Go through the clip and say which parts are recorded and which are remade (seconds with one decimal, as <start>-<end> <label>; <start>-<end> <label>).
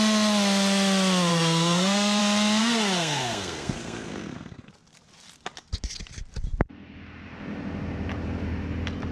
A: 0.0-1.3 recorded; 1.3-2.2 remade; 2.2-2.6 recorded; 2.6-4.7 remade; 4.7-9.1 recorded